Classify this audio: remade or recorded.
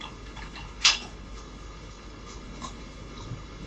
remade